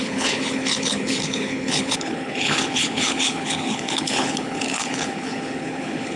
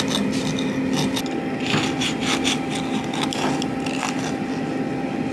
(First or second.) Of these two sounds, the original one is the second